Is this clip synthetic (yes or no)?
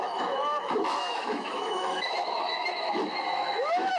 yes